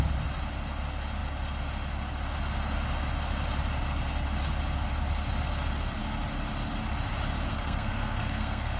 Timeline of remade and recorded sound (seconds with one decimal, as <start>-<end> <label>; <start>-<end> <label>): 0.0-7.5 recorded; 7.5-8.8 remade